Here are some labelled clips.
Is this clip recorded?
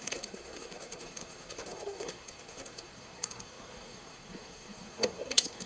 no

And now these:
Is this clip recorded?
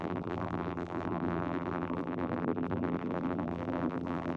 no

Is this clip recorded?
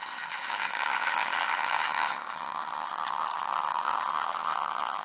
no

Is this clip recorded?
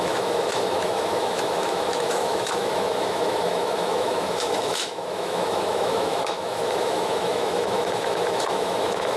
no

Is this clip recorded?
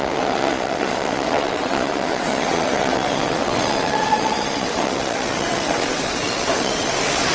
no